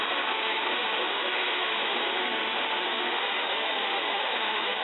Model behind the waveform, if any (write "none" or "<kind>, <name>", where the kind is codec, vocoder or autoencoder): autoencoder, DAC-VAE